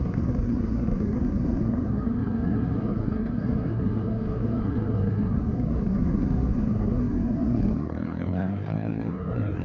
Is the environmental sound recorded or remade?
remade